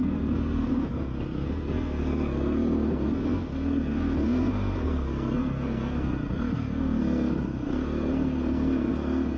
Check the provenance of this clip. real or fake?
fake